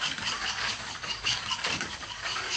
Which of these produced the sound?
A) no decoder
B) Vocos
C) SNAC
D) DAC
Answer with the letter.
D